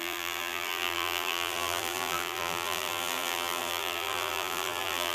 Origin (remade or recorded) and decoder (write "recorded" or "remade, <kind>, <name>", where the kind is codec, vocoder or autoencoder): remade, vocoder, BigVGAN v2